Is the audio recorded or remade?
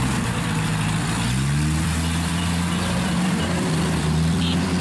remade